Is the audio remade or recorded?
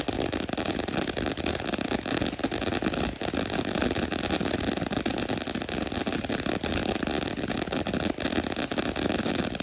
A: recorded